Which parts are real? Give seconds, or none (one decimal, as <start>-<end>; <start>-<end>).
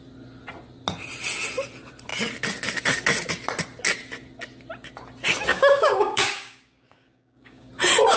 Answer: 0.0-5.5; 7.7-8.2